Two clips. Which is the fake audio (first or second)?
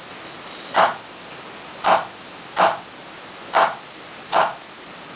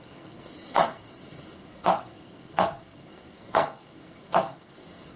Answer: second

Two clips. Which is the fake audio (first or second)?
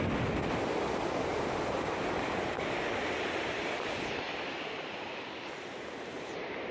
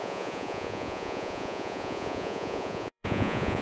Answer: second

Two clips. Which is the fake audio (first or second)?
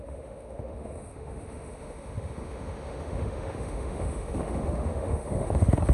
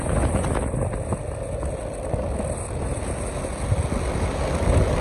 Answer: first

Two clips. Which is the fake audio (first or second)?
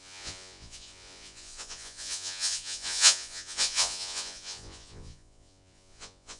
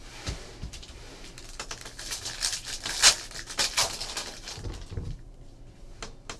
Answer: first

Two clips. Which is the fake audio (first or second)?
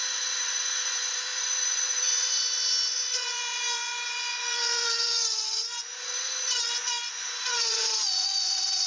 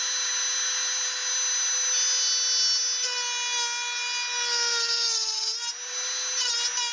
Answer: first